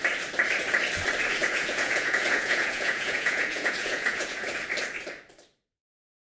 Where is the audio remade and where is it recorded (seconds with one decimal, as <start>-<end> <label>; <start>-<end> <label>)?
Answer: 0.0-1.4 recorded; 1.4-4.5 remade; 4.5-6.3 recorded